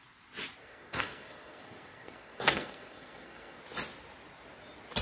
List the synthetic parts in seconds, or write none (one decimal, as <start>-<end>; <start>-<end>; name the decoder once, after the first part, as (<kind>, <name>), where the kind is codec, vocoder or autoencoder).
0.6-3.6 (codec, SNAC)